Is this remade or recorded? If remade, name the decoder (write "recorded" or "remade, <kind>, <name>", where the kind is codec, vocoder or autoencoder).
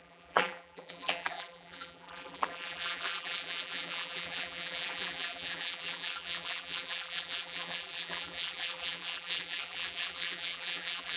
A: remade, vocoder, BigVGAN v2